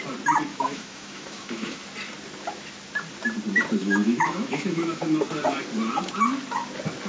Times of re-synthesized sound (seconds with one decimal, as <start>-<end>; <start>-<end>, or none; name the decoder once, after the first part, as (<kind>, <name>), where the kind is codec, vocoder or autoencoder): 0.5-1.8 (autoencoder, DAC-VAE); 3.8-5.0